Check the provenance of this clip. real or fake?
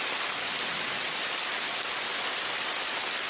real